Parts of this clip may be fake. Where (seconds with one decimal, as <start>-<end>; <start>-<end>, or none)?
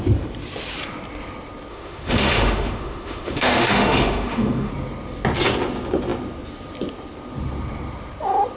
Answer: 1.7-4.7